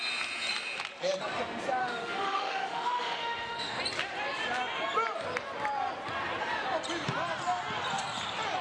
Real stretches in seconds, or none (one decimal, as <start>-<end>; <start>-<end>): 0.0-1.8; 3.8-8.6